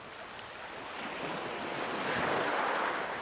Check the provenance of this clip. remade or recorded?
recorded